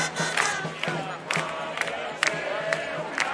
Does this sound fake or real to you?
real